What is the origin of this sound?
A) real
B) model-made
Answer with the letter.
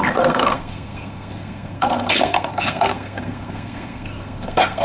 B